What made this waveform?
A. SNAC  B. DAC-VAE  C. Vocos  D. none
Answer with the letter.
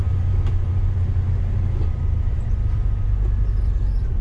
D